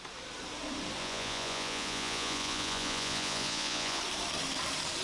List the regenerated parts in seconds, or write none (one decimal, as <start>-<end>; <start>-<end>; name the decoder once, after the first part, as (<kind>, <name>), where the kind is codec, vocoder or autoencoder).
1.0-4.0 (vocoder, Vocos)